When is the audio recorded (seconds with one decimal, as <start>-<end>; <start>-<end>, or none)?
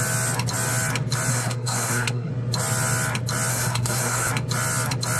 0.0-1.3; 2.3-3.5; 4.3-5.2